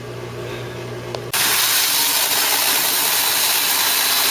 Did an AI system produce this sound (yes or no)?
no